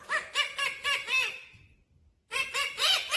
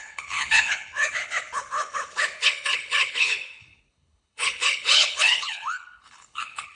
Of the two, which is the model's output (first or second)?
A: second